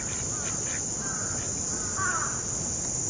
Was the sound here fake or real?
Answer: real